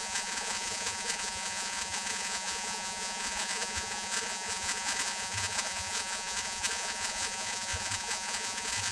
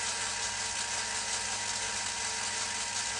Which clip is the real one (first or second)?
second